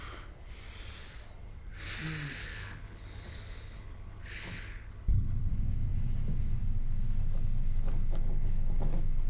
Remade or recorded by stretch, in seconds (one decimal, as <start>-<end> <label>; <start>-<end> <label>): 0.0-2.4 recorded; 2.4-5.5 remade; 5.5-9.3 recorded